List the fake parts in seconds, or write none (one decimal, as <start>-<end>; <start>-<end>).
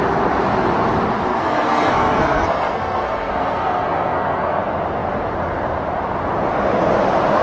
1.3-4.6